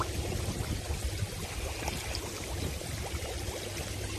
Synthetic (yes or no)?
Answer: no